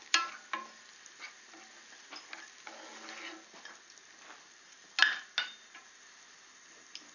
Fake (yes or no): no